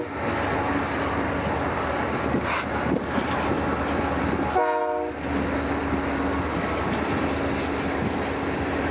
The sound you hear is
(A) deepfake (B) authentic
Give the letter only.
B